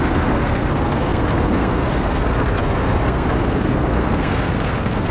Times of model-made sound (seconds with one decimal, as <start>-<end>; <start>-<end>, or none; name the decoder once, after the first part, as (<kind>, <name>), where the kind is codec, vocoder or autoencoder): 0.0-5.1 (codec, SNAC)